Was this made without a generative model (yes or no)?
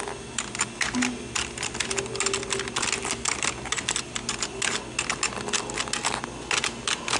yes